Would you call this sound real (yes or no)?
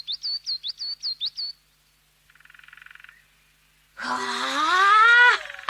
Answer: yes